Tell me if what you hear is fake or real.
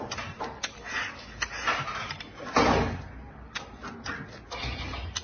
real